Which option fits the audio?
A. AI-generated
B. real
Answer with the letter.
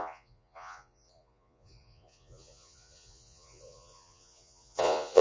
A